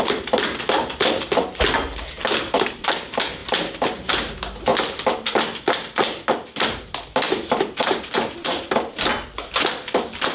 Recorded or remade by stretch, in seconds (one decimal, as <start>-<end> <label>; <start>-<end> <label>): 0.0-4.7 recorded; 4.7-9.1 remade; 9.1-10.3 recorded

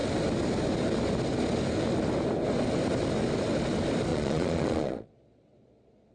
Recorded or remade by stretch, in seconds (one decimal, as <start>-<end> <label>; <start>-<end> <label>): 0.0-4.1 recorded; 4.1-6.1 remade

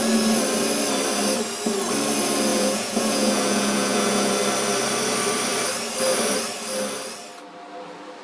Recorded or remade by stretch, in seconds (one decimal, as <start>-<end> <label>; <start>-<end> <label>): 0.0-2.5 recorded; 2.5-4.3 remade; 4.3-8.2 recorded

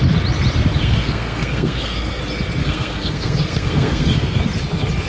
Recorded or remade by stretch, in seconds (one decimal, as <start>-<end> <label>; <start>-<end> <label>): 0.0-0.8 recorded; 0.8-2.2 remade; 2.2-2.6 recorded; 2.6-4.4 remade; 4.4-5.1 recorded

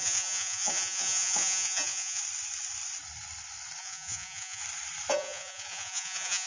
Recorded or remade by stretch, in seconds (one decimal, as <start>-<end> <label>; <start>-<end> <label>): 0.0-2.2 remade; 2.2-3.8 recorded; 3.8-4.6 remade; 4.6-5.1 recorded; 5.1-6.5 remade

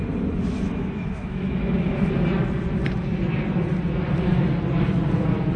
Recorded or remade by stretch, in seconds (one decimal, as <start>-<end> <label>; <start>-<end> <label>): 0.0-0.4 recorded; 0.4-2.1 remade; 2.1-5.6 recorded

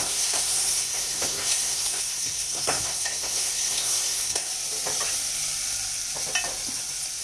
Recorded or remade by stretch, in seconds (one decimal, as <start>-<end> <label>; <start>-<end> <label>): 0.0-4.5 remade; 4.5-7.2 recorded

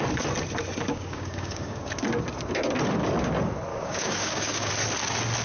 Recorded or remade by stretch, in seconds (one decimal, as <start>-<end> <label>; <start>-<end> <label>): 0.0-0.9 recorded; 0.9-1.9 remade; 1.9-3.7 recorded; 3.7-4.7 remade; 4.7-5.4 recorded